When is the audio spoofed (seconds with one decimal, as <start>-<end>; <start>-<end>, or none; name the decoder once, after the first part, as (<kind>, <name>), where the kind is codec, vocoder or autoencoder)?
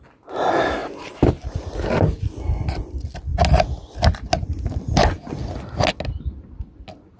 none